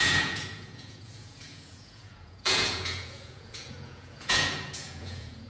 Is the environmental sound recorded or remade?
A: remade